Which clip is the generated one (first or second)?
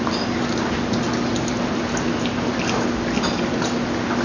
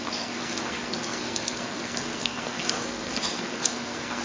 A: second